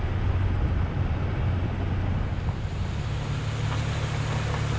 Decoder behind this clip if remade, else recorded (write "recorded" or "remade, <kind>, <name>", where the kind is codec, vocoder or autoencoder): recorded